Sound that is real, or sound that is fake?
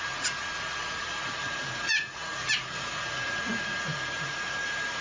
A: fake